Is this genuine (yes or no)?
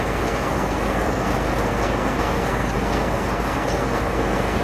no